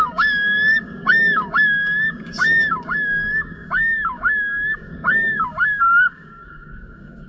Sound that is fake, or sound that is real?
fake